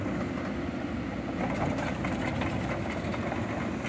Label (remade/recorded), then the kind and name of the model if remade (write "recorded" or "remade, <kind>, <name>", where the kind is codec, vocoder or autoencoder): recorded